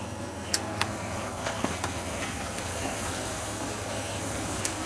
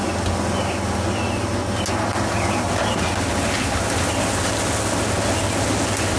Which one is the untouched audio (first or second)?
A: second